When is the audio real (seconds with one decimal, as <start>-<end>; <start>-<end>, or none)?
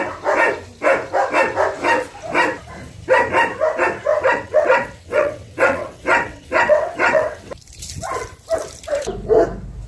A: 0.0-4.1; 7.5-9.9